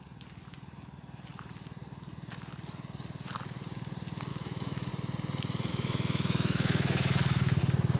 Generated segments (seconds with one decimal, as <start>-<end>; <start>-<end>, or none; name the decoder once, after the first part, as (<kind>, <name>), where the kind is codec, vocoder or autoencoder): 4.3-4.9 (autoencoder, DAC-VAE); 5.7-7.6